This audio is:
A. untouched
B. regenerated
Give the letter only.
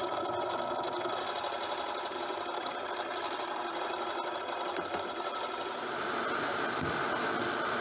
A